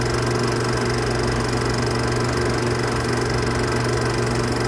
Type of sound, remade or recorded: recorded